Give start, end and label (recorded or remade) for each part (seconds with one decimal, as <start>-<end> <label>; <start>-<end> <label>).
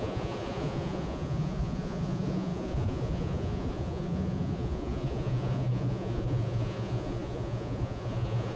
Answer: 0.0-8.6 remade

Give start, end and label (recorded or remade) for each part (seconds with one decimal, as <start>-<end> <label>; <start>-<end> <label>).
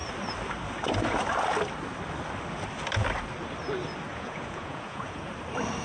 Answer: 0.0-4.1 recorded; 4.1-5.3 remade; 5.3-5.8 recorded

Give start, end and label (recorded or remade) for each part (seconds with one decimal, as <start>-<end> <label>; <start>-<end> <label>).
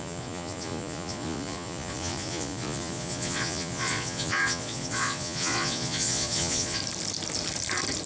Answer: 0.0-6.8 remade; 6.8-8.1 recorded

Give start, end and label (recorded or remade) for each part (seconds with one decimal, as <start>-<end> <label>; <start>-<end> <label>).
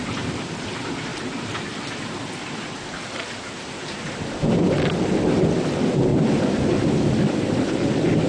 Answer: 0.0-8.3 recorded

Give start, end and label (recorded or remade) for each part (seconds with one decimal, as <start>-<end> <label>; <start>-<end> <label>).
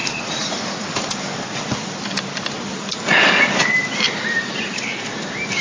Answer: 0.0-0.5 remade; 0.5-5.6 recorded